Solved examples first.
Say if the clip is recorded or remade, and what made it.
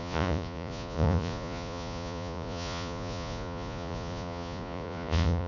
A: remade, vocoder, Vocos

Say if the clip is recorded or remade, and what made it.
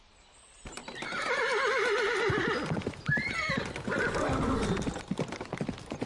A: recorded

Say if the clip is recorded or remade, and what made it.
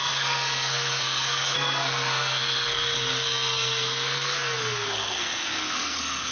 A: remade, codec, SNAC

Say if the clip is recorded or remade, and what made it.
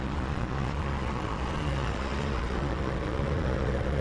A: remade, vocoder, Vocos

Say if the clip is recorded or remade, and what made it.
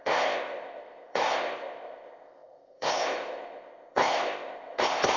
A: remade, codec, ZipCodec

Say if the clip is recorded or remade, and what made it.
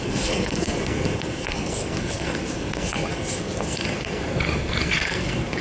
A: remade, codec, SNAC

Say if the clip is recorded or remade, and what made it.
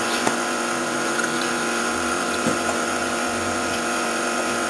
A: remade, vocoder, Vocos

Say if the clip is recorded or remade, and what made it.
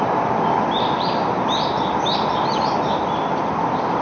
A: recorded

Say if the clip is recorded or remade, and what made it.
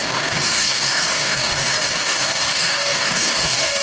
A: remade, codec, DAC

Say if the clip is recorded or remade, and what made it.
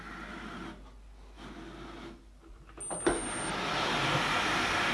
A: recorded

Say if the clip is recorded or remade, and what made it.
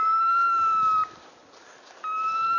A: recorded